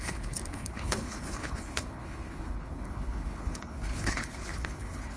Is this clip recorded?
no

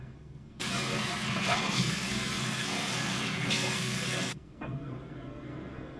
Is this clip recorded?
no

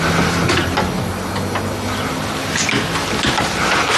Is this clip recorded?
yes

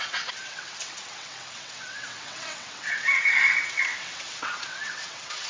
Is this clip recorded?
no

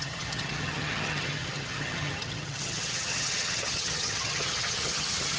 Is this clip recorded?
no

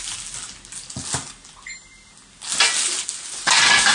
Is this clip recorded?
yes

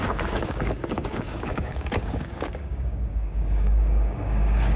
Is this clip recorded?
no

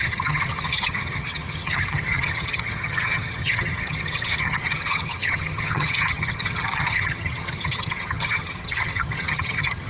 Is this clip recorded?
no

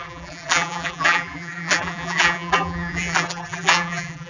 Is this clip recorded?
no